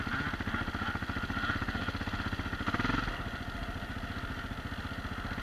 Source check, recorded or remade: recorded